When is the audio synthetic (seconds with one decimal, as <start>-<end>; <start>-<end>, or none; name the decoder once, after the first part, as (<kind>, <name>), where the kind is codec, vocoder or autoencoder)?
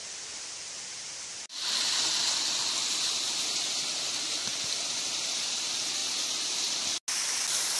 0.0-1.7 (vocoder, BigVGAN v2); 6.0-6.6